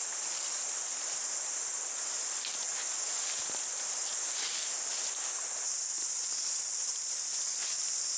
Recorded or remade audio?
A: recorded